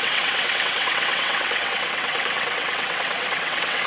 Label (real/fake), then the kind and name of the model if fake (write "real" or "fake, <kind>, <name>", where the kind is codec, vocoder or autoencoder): fake, vocoder, WaveNeXt